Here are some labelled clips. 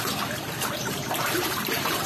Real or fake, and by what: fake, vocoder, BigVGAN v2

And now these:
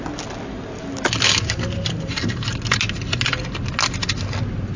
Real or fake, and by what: real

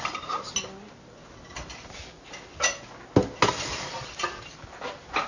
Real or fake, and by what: real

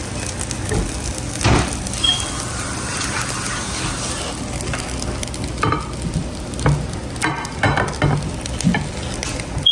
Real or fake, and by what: real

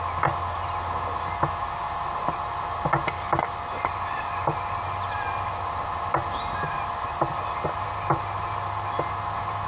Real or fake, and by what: real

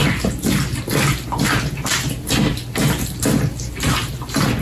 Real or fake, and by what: real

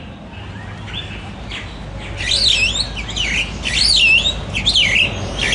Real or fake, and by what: real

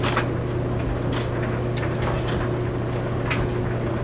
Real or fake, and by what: real